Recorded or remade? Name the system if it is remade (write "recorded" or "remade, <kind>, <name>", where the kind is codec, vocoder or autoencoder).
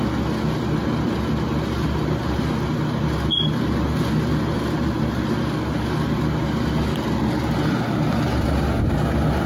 recorded